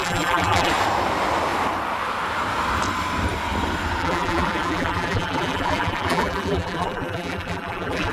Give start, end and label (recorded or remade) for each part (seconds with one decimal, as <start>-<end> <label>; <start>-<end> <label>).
0.0-0.7 remade; 0.7-4.0 recorded; 4.0-8.1 remade

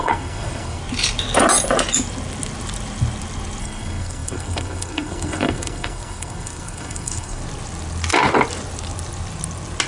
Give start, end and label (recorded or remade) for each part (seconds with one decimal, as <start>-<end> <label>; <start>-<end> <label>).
0.0-0.8 remade; 0.8-3.6 recorded; 3.6-7.4 remade; 7.4-9.9 recorded